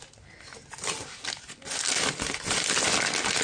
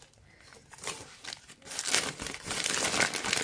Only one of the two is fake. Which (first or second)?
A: second